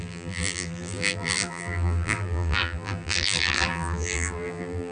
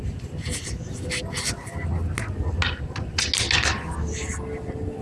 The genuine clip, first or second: second